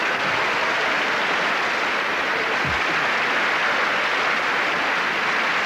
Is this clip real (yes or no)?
yes